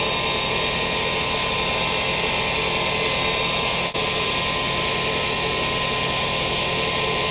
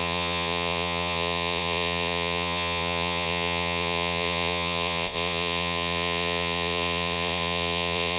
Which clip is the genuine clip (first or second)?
first